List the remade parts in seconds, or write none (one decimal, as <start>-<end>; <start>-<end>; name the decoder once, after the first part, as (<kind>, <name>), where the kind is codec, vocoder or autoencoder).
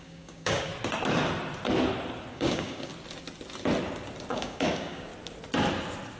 0.0-0.7 (codec, DAC); 2.3-2.9; 4.3-5.1